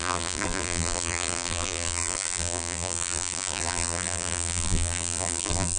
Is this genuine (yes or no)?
no